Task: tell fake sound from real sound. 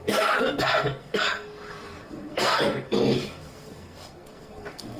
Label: fake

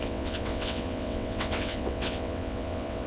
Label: fake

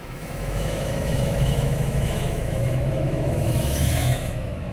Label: fake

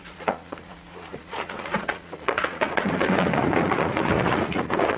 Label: fake